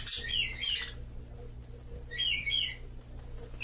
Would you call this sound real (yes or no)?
yes